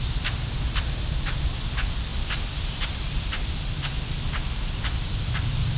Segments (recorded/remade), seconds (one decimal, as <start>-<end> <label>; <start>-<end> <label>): 0.0-5.8 recorded